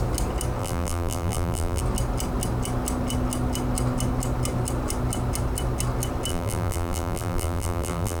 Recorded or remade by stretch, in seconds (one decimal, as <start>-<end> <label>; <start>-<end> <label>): 0.0-0.6 recorded; 0.6-1.8 remade; 1.8-6.3 recorded; 6.3-8.2 remade

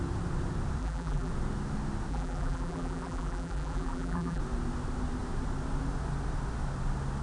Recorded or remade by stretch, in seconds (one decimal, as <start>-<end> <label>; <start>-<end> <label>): 0.0-0.8 recorded; 0.8-1.3 remade; 1.3-2.1 recorded; 2.1-4.4 remade; 4.4-7.2 recorded

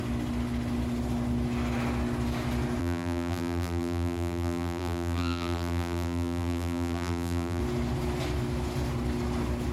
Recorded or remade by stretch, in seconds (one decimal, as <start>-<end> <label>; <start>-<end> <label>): 0.0-2.8 recorded; 2.8-7.6 remade; 7.6-9.7 recorded

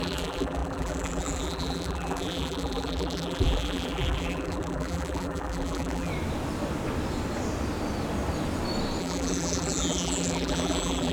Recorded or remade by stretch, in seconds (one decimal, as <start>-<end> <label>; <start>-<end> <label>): 0.0-6.1 remade; 6.1-9.0 recorded; 9.0-11.1 remade

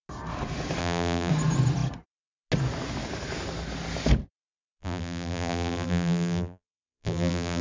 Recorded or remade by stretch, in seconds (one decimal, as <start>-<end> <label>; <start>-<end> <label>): 0.0-0.8 recorded; 0.8-1.3 remade; 1.3-4.8 recorded; 4.8-7.6 remade

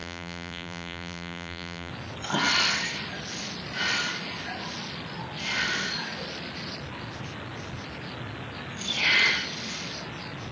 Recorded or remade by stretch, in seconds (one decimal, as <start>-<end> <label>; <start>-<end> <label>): 0.0-1.9 remade; 1.9-10.5 recorded

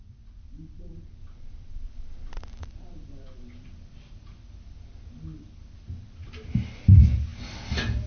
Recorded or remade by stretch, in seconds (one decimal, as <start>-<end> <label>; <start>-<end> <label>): 0.0-8.1 remade

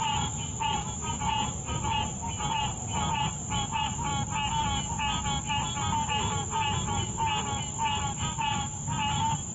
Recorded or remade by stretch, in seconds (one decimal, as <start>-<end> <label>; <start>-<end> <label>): 0.0-4.1 remade; 4.1-5.5 recorded; 5.5-7.2 remade; 7.2-8.1 recorded; 8.1-9.5 remade